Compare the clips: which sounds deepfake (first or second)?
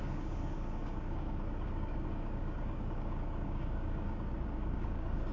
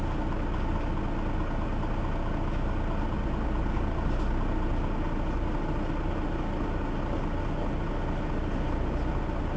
first